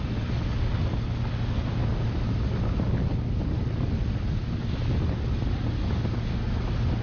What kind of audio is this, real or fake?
real